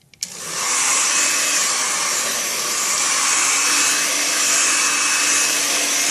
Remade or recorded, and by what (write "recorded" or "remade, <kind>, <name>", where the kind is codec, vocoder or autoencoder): recorded